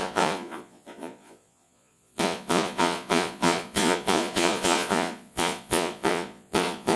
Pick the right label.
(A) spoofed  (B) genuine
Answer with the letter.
A